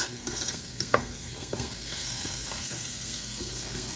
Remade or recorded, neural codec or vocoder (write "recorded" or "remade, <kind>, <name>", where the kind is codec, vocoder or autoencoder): remade, codec, SNAC